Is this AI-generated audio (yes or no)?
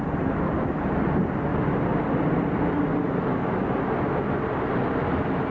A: no